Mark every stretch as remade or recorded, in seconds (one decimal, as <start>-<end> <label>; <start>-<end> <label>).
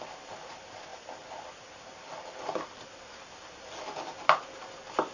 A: 0.0-5.1 recorded